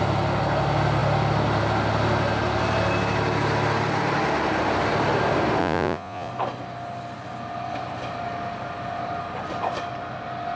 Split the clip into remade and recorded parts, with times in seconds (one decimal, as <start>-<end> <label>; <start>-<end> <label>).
0.0-5.6 recorded; 5.6-6.3 remade; 6.3-10.6 recorded